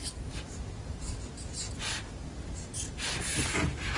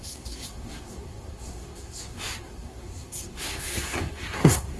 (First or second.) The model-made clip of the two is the second